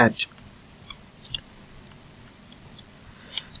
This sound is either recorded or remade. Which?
recorded